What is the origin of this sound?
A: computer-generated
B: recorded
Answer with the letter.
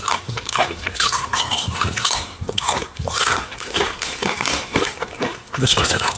A